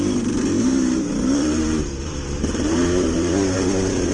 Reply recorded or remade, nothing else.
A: remade